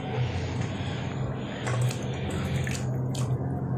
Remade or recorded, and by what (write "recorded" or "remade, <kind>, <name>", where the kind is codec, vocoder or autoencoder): recorded